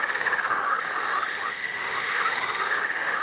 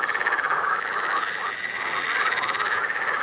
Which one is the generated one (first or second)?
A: first